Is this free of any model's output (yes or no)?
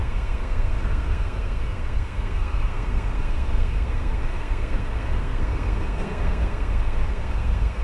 no